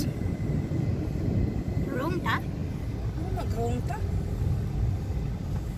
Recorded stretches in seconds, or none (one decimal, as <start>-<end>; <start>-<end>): 0.0-5.8